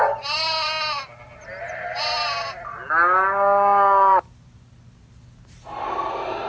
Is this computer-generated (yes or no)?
no